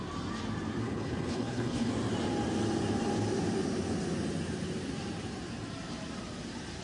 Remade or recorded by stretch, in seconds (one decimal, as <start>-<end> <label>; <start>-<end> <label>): 0.0-0.8 recorded; 0.8-1.9 remade; 1.9-6.8 recorded